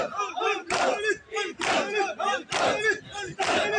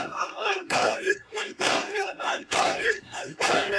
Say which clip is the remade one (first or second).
second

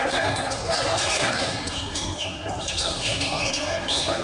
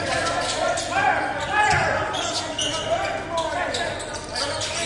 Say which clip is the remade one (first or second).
first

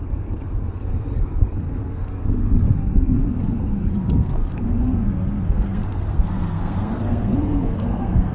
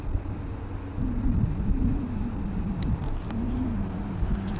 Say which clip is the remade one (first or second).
first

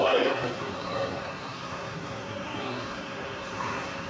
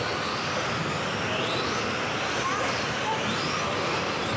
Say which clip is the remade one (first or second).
first